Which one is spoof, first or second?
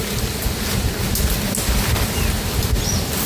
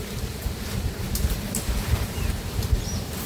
second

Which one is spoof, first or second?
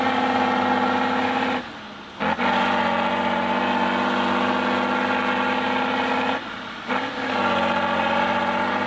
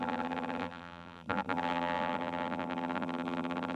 second